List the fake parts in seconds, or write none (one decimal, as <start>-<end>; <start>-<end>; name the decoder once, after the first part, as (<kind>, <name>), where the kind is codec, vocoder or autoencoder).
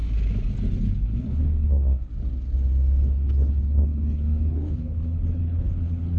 0.8-2.1 (codec, HILCodec); 3.0-6.2